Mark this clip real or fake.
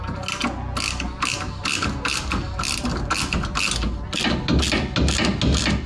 real